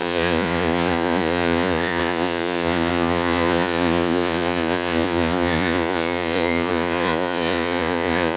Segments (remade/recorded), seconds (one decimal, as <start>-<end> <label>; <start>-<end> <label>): 0.0-8.4 remade